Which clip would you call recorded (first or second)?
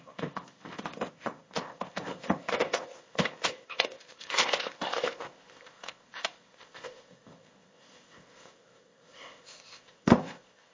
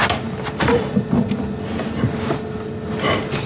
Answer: second